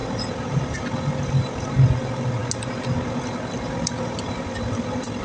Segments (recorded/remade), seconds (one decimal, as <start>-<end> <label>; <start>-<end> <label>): 0.0-5.2 recorded